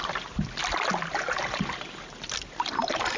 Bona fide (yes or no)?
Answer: yes